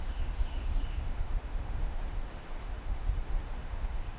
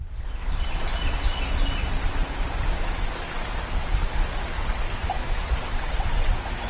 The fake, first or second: first